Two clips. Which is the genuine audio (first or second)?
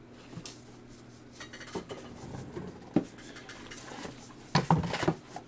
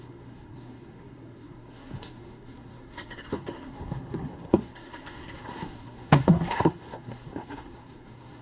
first